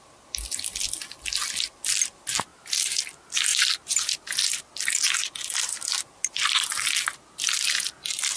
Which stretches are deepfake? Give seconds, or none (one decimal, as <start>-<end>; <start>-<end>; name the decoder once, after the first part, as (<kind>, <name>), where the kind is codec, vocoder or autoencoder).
2.5-3.0 (vocoder, BigVGAN v2); 3.5-4.6